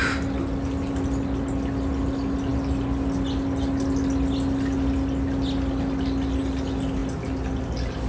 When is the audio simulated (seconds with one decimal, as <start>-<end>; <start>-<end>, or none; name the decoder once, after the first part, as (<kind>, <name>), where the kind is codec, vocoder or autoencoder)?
none